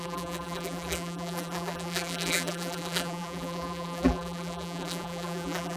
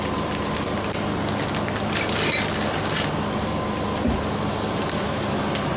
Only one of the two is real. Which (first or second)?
second